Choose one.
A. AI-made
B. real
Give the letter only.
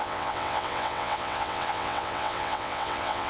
A